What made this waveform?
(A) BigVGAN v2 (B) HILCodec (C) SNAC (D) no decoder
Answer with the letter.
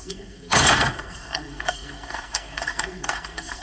C